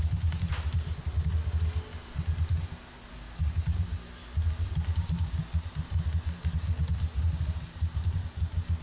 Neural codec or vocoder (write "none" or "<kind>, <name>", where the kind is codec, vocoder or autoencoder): none